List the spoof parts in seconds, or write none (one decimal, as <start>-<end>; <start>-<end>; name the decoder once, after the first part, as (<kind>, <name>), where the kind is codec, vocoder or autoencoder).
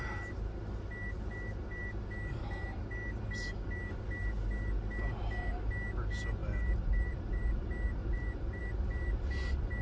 6.4-7.5 (vocoder, BigVGAN v2); 8.0-8.6